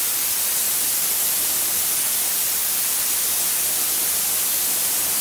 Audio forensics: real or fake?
real